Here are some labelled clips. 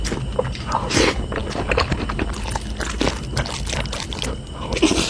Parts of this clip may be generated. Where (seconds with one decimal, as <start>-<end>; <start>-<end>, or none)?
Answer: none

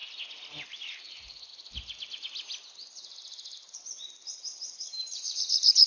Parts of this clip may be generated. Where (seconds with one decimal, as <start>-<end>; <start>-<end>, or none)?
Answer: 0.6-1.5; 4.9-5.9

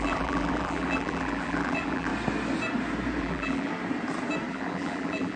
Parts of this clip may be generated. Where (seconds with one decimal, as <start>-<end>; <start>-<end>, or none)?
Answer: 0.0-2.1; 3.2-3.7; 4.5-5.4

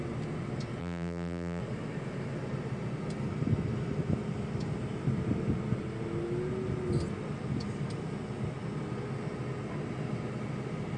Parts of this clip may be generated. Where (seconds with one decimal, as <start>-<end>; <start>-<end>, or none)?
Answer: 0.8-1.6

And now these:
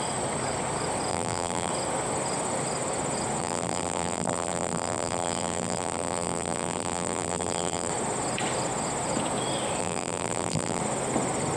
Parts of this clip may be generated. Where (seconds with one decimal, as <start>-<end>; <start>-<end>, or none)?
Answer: 1.1-1.7; 3.4-7.9; 9.8-10.8